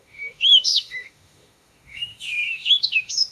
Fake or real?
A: fake